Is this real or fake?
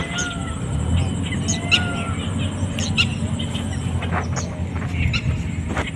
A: real